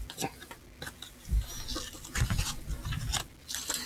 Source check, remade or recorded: recorded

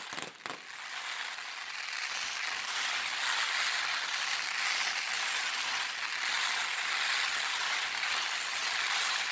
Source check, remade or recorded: recorded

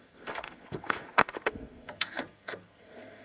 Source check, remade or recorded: remade